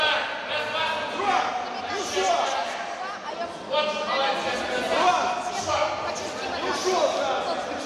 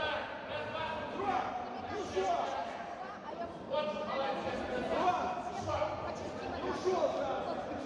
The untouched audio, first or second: first